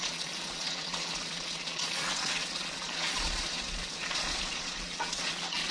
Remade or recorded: remade